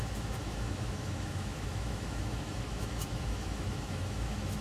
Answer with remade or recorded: remade